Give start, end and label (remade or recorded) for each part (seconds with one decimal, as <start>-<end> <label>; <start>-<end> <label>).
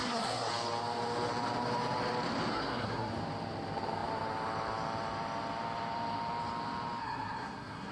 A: 0.0-0.5 remade; 0.5-2.5 recorded; 2.5-3.1 remade; 3.1-7.0 recorded; 7.0-7.9 remade